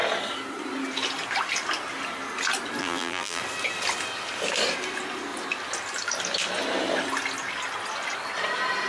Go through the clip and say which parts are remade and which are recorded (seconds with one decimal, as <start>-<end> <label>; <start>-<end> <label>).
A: 0.0-2.8 recorded; 2.8-3.4 remade; 3.4-8.9 recorded